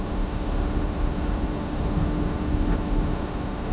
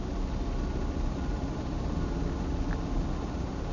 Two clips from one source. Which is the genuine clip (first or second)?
second